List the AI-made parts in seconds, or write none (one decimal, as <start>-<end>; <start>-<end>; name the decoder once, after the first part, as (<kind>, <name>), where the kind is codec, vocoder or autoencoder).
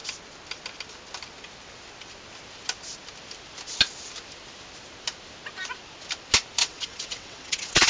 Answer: 6.6-7.9 (vocoder, WaveNeXt)